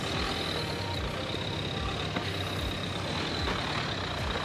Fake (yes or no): no